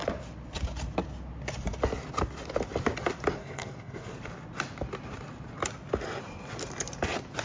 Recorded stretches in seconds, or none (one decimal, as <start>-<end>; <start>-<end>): 0.0-3.4; 4.1-7.4